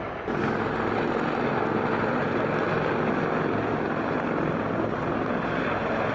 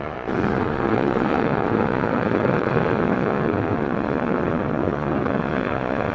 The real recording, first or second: first